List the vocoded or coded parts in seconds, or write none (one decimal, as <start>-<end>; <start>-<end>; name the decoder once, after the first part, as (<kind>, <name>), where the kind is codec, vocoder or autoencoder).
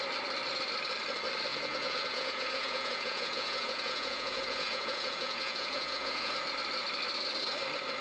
1.5-6.3 (vocoder, Vocos)